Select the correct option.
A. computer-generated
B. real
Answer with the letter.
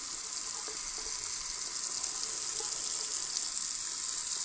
B